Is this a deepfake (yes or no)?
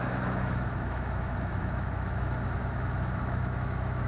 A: yes